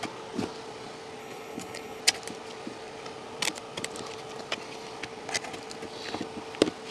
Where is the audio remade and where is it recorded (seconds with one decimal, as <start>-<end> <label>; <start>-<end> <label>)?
0.0-1.2 recorded; 1.2-2.0 remade; 2.0-6.9 recorded